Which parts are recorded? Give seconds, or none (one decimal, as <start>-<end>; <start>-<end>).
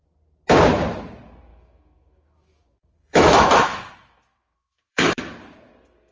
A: 0.0-1.5; 5.2-6.1